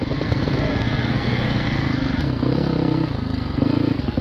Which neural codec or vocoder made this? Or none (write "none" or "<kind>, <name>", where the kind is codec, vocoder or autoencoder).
codec, SNAC